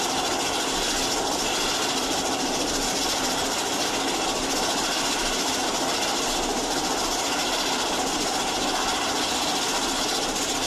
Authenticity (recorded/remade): recorded